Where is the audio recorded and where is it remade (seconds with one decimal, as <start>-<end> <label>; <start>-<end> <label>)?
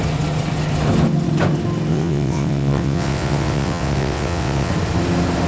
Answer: 0.0-1.9 recorded; 1.9-4.7 remade; 4.7-5.5 recorded